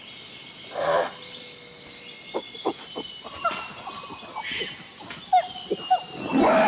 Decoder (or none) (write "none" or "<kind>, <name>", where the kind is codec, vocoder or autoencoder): none